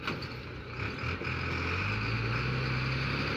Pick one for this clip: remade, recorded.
recorded